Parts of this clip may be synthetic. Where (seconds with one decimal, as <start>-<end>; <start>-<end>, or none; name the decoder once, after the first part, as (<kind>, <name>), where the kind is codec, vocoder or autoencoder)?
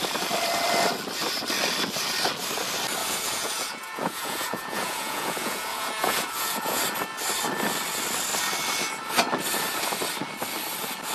3.0-6.8 (vocoder, Vocos)